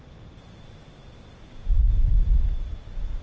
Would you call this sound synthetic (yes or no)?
no